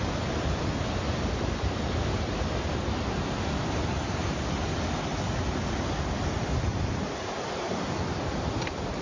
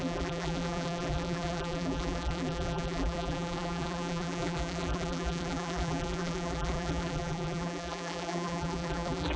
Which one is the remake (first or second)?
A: second